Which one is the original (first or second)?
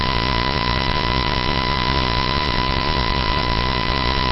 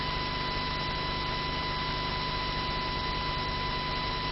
second